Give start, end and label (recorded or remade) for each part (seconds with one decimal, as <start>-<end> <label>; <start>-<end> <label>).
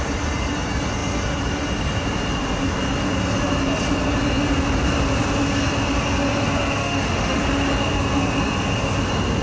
0.0-6.8 recorded; 6.8-7.4 remade; 7.4-9.4 recorded